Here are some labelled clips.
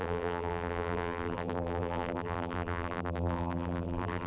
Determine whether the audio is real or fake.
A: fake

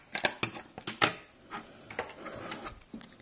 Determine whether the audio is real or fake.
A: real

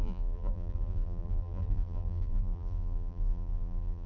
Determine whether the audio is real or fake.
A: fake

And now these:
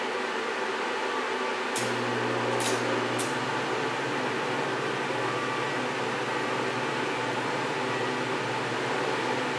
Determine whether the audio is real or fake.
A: real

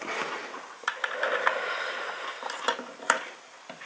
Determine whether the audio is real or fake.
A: real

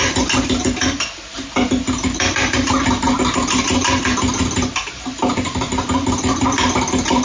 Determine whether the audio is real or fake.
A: real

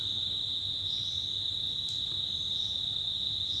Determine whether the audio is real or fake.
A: real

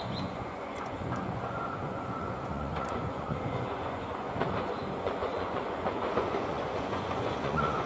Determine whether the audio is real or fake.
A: fake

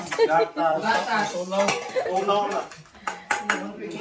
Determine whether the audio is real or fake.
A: fake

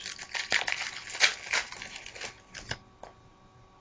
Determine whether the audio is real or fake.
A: real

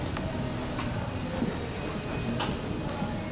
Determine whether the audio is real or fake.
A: real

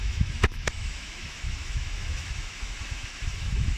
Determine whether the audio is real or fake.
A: fake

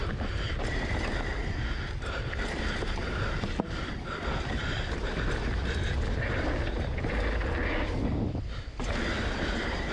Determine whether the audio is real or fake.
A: real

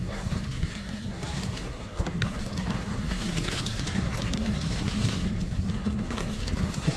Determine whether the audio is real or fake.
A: fake